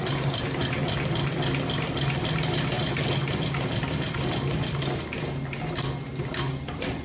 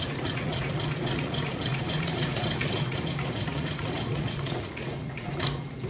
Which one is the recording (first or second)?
first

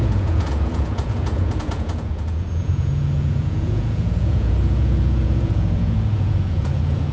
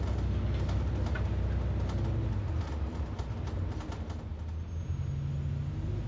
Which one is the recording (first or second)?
second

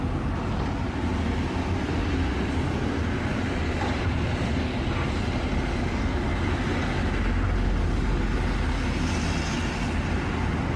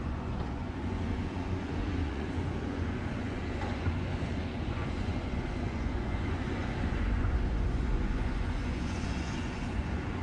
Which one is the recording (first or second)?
first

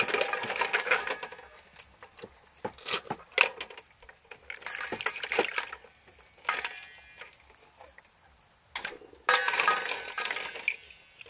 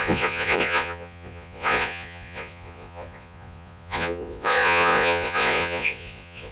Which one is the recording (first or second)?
first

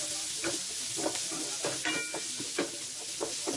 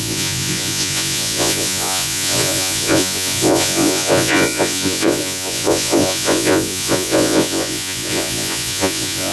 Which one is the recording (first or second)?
first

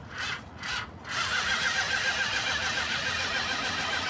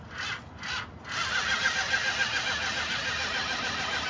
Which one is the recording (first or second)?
second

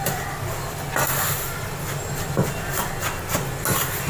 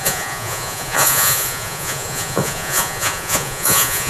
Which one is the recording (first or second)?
first